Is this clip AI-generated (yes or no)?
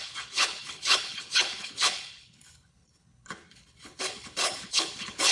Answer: yes